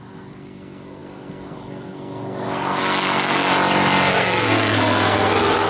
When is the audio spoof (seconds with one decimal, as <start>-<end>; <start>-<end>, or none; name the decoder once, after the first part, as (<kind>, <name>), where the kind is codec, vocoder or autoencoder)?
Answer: 0.0-3.5 (codec, SNAC); 4.1-5.7